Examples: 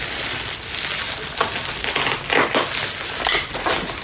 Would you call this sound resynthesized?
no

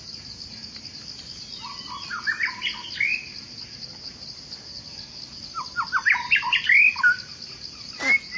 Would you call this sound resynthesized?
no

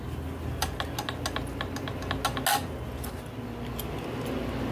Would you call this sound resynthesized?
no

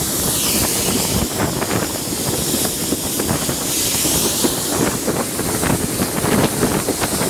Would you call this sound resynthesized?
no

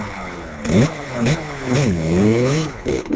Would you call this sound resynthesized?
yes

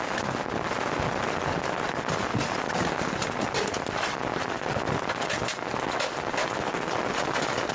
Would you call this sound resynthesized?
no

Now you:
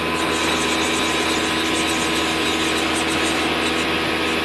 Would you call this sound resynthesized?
no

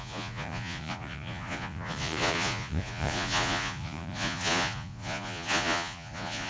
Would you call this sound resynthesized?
yes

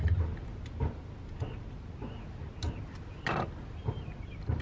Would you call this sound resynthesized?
no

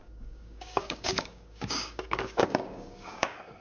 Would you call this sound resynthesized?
yes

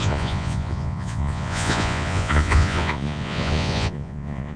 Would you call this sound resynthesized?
yes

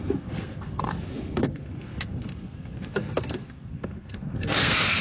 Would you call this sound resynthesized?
yes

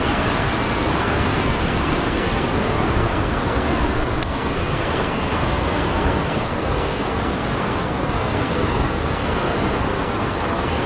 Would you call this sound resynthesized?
yes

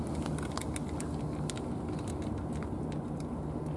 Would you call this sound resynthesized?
no